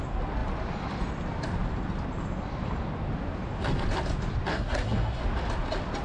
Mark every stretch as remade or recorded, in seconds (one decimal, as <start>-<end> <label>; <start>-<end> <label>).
0.0-4.5 recorded; 4.5-5.2 remade; 5.2-6.0 recorded